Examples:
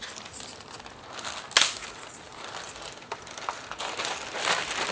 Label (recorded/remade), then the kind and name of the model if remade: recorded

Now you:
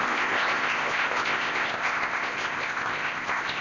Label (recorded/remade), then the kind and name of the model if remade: remade, codec, ZipCodec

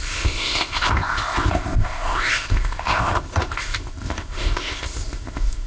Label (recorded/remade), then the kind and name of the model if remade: remade, codec, ZipCodec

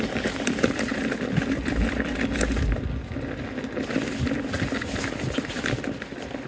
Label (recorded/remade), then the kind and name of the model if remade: recorded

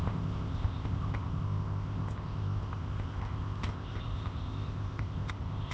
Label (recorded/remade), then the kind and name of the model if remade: remade, codec, ZipCodec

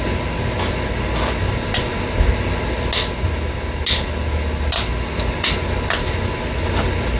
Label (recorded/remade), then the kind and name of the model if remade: recorded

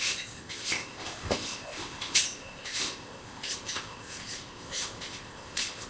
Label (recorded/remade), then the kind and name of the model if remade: remade, codec, ZipCodec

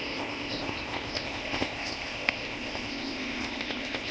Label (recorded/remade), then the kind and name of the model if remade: remade, codec, ZipCodec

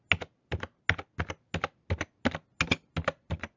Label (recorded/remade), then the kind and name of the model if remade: recorded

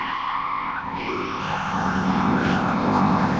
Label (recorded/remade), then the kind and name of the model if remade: remade, codec, ZipCodec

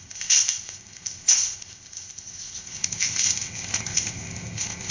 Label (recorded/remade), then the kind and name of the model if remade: remade, codec, ZipCodec